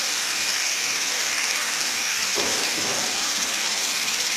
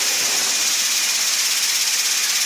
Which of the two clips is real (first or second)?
second